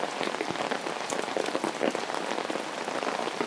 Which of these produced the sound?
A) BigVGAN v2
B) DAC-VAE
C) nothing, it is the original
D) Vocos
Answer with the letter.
C